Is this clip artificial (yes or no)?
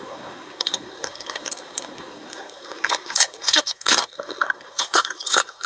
yes